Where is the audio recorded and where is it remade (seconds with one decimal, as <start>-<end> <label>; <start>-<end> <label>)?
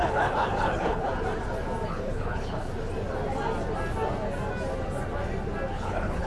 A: 0.0-1.1 remade; 1.1-1.9 recorded; 1.9-2.7 remade; 2.7-5.7 recorded; 5.7-6.3 remade